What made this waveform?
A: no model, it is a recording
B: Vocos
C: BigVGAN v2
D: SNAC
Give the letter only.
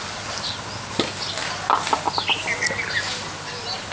A